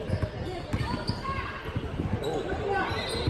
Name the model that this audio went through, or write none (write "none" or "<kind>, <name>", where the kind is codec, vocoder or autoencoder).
none